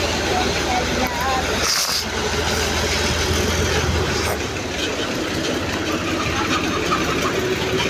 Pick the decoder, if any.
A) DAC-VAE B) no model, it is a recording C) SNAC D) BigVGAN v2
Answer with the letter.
B